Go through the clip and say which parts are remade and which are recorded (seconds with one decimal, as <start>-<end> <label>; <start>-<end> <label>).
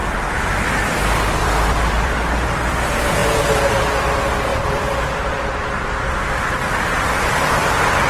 0.0-2.8 remade; 2.8-4.5 recorded; 4.5-6.4 remade; 6.4-8.1 recorded